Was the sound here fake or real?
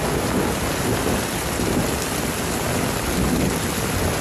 real